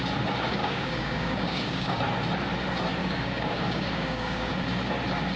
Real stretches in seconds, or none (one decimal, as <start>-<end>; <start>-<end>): 0.0-0.6; 2.0-3.0; 4.5-5.4